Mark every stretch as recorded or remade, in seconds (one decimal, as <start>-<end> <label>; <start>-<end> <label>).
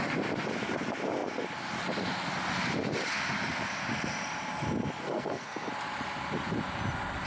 0.0-5.0 recorded; 5.0-5.7 remade; 5.7-7.3 recorded